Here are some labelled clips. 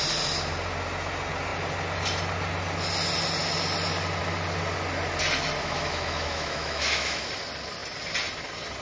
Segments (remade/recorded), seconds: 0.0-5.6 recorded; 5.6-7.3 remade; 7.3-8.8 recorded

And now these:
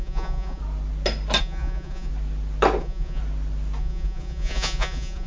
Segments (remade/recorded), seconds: 0.0-0.6 remade; 0.6-1.4 recorded; 1.4-2.1 remade; 2.1-2.8 recorded; 2.8-3.2 remade; 3.2-3.8 recorded; 3.8-5.3 remade

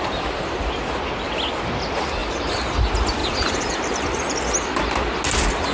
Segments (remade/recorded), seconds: 0.0-2.2 recorded; 2.2-2.7 remade; 2.7-3.2 recorded; 3.2-4.2 remade; 4.2-5.7 recorded